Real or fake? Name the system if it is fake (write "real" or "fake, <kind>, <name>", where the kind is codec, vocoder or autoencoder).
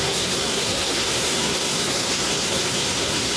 fake, codec, SNAC